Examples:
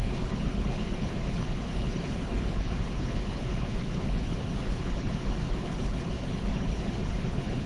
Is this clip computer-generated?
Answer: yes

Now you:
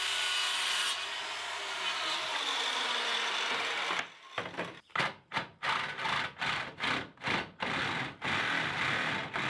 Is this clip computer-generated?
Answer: no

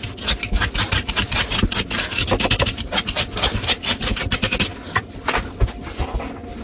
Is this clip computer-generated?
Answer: no